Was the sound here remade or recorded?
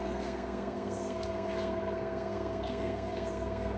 remade